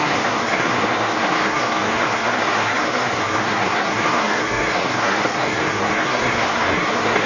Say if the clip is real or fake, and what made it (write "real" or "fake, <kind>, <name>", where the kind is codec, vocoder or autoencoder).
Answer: fake, codec, SNAC